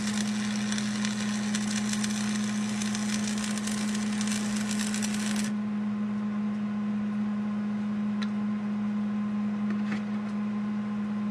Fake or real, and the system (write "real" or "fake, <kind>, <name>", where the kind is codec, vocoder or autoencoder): real